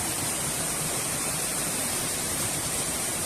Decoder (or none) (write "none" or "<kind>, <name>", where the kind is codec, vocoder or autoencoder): vocoder, BigVGAN v2